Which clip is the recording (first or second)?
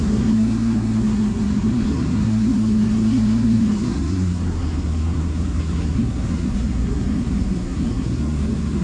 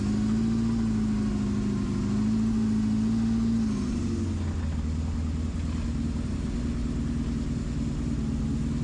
second